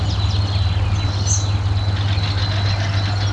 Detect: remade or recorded recorded